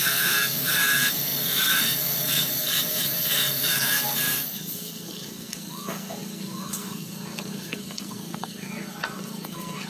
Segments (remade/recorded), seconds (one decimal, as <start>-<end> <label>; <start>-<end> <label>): 0.0-9.9 remade